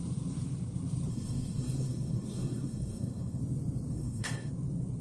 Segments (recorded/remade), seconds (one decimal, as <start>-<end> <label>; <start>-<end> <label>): 0.0-1.1 recorded; 1.1-3.4 remade; 3.4-3.9 recorded; 3.9-4.5 remade; 4.5-5.0 recorded